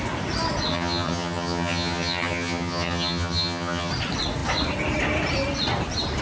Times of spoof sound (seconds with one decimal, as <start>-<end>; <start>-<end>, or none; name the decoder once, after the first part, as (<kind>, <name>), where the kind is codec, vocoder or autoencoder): 0.7-3.9 (vocoder, HiFi-GAN)

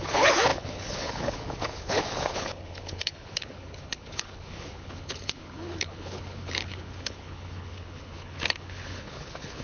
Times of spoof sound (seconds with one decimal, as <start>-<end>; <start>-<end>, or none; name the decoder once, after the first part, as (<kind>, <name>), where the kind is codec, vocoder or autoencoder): 0.0-9.6 (codec, HILCodec)

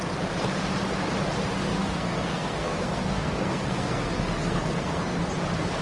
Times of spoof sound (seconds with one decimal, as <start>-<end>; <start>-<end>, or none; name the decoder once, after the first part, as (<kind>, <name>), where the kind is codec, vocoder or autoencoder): 1.7-5.2 (codec, SNAC)